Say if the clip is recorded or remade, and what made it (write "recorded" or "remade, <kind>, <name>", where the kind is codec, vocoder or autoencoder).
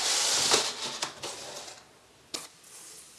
recorded